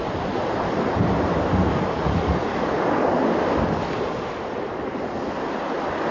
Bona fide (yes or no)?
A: yes